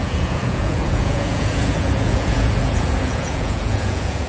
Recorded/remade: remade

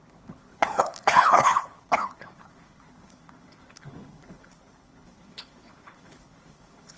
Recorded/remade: remade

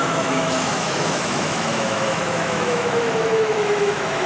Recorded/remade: remade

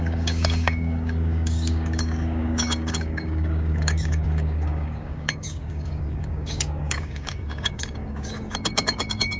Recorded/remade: remade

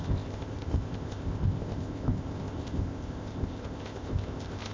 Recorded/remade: remade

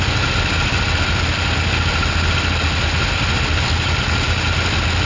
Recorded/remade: recorded